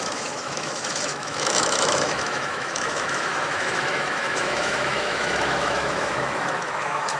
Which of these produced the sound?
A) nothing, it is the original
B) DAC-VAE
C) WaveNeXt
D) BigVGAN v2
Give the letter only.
B